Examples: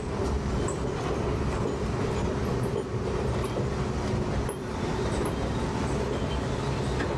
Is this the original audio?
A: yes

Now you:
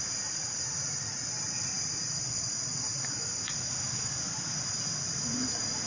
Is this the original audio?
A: no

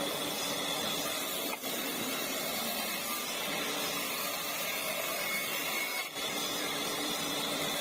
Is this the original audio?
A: no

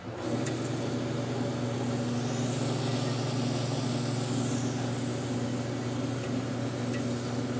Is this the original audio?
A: yes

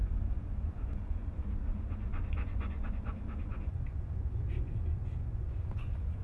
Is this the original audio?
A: no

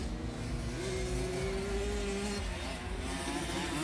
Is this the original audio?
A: yes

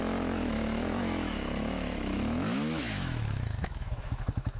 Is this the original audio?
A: no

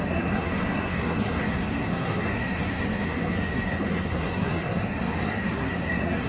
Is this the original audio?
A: no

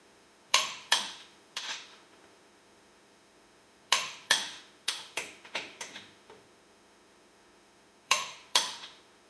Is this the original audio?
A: no